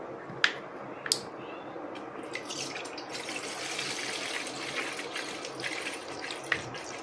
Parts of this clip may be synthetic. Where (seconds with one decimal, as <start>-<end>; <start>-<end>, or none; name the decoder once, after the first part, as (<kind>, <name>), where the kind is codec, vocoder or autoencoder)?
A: none